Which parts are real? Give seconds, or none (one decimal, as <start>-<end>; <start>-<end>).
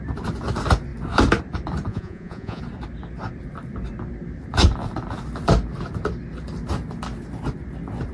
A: 0.0-1.9; 2.6-8.1